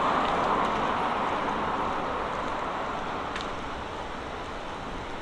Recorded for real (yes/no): yes